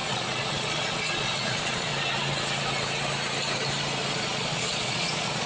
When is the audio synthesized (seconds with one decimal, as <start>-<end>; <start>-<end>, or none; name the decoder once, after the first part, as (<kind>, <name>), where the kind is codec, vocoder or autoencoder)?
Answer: 0.0-1.9 (vocoder, Vocos); 4.1-5.5